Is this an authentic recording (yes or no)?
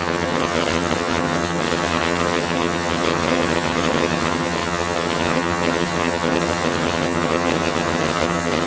no